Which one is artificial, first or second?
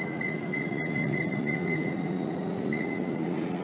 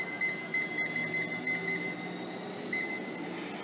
first